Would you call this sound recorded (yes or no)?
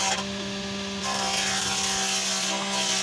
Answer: yes